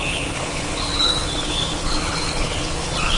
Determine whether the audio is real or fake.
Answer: fake